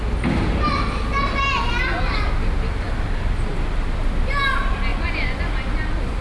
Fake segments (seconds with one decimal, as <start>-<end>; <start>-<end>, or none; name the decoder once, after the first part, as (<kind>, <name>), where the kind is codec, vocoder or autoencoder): 4.9-5.4 (vocoder, Vocos)